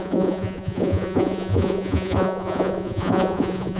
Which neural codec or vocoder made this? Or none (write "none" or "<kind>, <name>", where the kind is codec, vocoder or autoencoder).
vocoder, Vocos